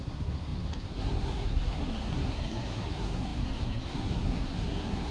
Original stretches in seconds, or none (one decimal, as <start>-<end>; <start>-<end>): none